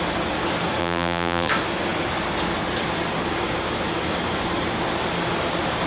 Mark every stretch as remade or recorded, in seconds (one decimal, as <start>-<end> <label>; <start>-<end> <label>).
0.0-0.8 recorded; 0.8-1.5 remade; 1.5-5.9 recorded